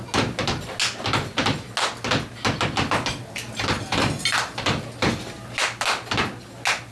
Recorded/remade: recorded